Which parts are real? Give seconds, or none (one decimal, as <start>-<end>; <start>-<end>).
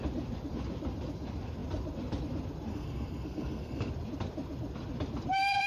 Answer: 0.0-2.7; 3.9-5.7